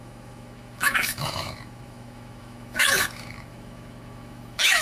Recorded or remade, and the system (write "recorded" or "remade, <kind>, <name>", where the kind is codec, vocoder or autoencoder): remade, autoencoder, DAC-VAE